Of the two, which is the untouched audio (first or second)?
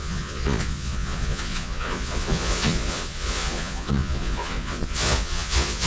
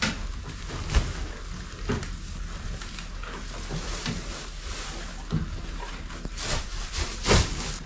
second